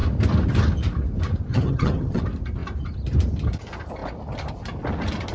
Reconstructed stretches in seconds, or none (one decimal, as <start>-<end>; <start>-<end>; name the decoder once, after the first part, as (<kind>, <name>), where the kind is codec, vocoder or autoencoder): 1.5-2.2 (vocoder, HiFi-GAN)